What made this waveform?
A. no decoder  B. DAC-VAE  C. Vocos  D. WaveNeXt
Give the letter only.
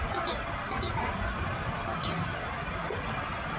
A